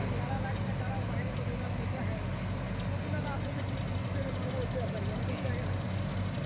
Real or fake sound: real